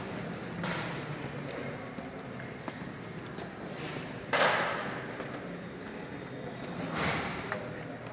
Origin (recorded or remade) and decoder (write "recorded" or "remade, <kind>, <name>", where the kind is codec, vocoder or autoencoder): recorded